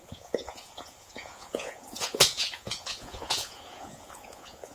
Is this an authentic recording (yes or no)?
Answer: no